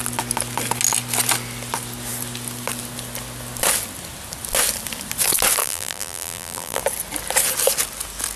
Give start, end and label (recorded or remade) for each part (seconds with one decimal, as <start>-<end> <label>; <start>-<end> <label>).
0.0-5.6 recorded; 5.6-6.8 remade; 6.8-8.4 recorded